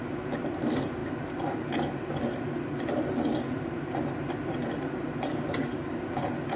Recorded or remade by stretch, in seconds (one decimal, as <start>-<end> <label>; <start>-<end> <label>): 0.0-6.6 recorded

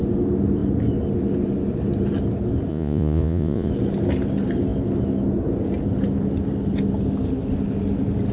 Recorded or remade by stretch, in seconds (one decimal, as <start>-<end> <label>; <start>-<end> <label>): 0.0-2.7 recorded; 2.7-3.7 remade; 3.7-8.3 recorded